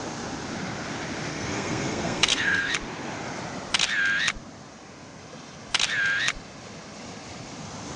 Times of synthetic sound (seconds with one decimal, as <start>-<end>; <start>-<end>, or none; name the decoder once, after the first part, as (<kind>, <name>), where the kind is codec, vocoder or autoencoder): 1.3-2.7 (codec, SNAC)